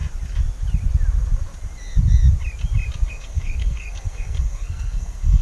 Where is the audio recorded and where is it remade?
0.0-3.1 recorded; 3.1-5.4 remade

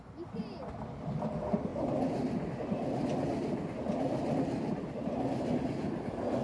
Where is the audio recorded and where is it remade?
0.0-6.4 recorded

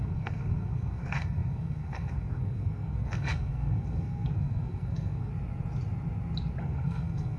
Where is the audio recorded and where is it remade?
0.0-5.3 remade; 5.3-6.6 recorded; 6.6-7.4 remade

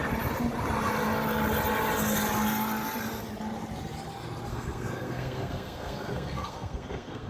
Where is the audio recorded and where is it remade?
0.0-4.5 recorded; 4.5-7.3 remade

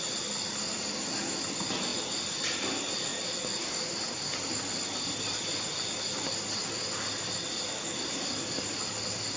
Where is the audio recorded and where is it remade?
0.0-9.4 recorded

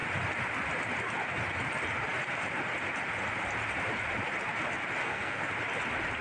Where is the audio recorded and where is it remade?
0.0-5.0 recorded; 5.0-5.5 remade; 5.5-6.2 recorded